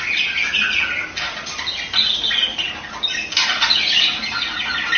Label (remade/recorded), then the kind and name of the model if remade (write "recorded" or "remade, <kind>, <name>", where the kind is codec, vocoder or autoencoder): recorded